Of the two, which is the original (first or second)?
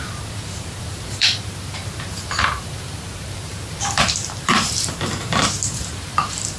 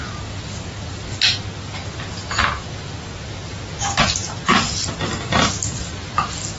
second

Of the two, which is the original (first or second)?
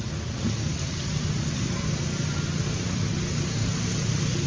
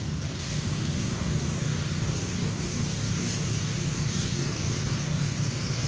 first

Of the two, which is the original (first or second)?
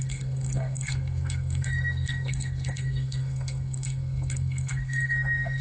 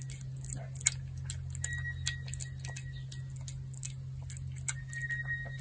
second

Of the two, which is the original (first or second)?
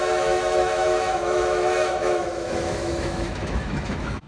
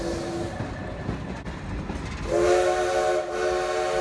second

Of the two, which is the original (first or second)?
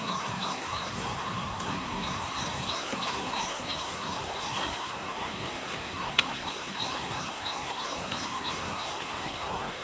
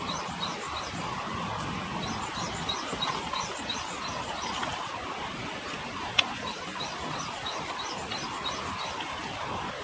second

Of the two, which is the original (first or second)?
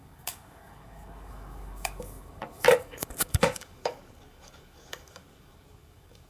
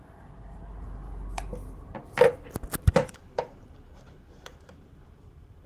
second